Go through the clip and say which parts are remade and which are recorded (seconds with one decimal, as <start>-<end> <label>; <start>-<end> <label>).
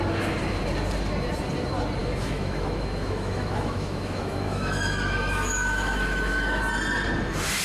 0.0-2.0 recorded; 2.0-6.6 remade; 6.6-7.6 recorded